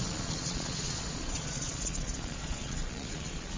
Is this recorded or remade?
remade